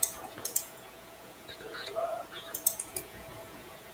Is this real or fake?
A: fake